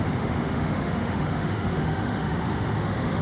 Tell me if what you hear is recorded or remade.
remade